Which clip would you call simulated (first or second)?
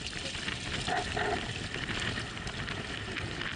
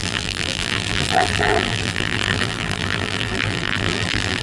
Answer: second